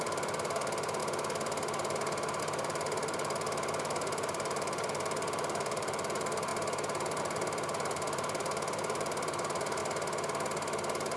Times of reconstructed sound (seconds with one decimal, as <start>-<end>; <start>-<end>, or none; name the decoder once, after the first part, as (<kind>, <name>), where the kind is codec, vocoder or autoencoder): 0.0-1.0 (vocoder, BigVGAN v2); 2.4-6.5; 7.2-9.8